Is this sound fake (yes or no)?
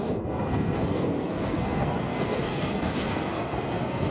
yes